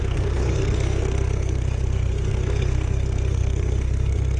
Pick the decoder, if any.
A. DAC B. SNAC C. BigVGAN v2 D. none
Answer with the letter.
B